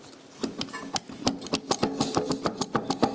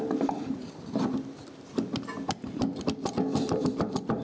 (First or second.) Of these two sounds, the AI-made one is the second